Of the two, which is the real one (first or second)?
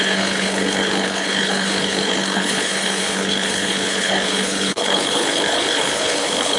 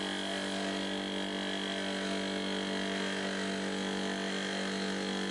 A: second